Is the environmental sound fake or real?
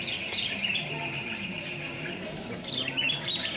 fake